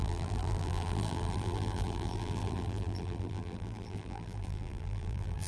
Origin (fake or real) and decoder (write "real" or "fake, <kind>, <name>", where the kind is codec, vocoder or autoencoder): fake, vocoder, BigVGAN v2